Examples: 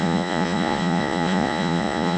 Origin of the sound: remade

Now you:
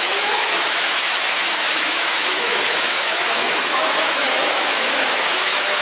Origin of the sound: remade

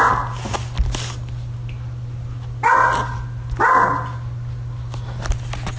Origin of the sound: recorded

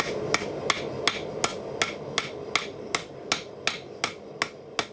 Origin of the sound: recorded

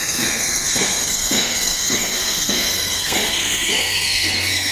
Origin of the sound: remade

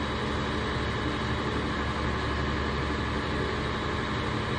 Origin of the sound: recorded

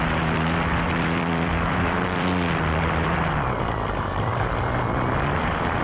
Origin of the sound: remade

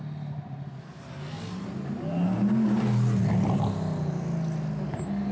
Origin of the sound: recorded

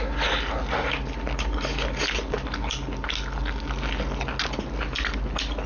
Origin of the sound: recorded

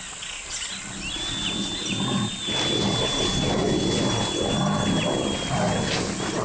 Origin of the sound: recorded